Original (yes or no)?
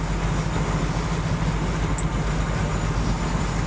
yes